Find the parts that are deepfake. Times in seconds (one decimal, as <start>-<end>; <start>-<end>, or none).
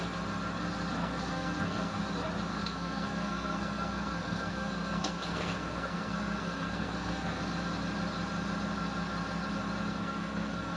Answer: 1.0-2.0; 2.5-7.4; 9.9-10.8